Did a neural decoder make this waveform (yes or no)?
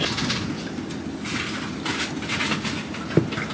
no